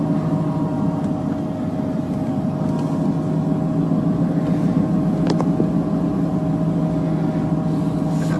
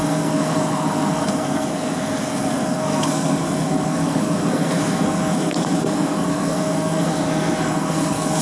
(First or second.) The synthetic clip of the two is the second